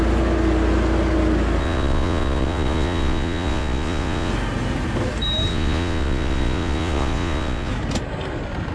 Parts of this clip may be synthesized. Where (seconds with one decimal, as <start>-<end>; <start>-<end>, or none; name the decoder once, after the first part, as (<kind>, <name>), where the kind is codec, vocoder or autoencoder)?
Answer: 1.6-4.3 (vocoder, Vocos); 5.5-7.7